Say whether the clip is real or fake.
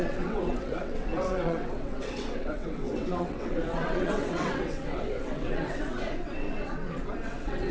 fake